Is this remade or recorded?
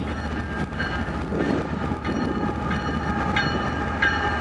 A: recorded